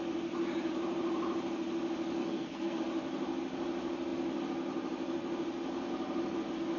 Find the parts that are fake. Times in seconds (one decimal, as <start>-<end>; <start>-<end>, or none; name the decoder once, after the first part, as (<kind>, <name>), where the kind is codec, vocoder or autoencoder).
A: 2.2-2.8 (codec, SNAC)